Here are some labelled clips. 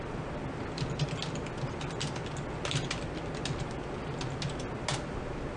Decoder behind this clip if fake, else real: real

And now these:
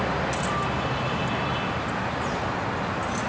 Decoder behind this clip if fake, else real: real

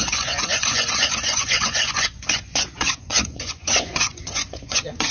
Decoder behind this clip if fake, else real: fake, vocoder, Vocos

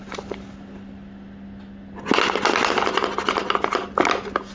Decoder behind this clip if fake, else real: real